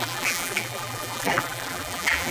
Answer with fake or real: fake